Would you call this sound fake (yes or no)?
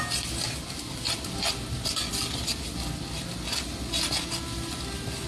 no